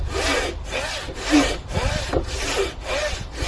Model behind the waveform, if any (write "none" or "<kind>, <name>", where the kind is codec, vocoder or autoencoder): none